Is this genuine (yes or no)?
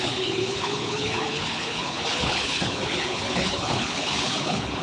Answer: no